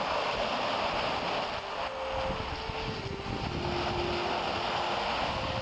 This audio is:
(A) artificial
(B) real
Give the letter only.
B